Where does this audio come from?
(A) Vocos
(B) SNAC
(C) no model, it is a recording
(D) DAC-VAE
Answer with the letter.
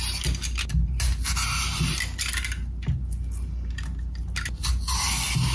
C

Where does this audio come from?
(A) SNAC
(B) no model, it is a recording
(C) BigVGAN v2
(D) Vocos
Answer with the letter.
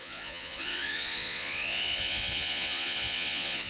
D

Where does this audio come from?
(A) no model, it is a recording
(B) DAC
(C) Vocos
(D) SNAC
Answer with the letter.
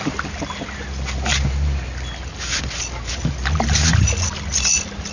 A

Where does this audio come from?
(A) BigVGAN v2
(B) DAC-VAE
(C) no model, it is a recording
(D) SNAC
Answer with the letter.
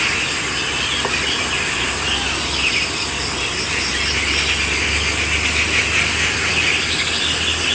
C